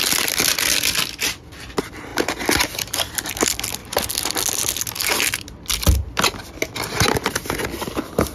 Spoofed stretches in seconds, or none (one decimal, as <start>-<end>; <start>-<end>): none